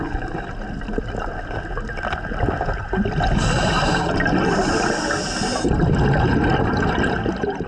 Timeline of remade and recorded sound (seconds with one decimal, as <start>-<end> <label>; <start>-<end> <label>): 0.0-7.7 recorded